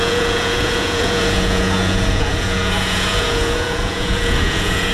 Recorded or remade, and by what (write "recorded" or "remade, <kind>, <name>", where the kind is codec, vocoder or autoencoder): remade, vocoder, Vocos